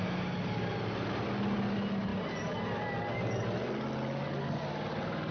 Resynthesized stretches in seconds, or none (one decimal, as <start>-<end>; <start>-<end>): none

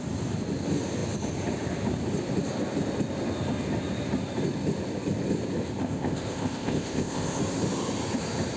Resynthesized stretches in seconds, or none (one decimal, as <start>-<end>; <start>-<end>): 5.8-7.4